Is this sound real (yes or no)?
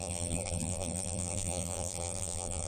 no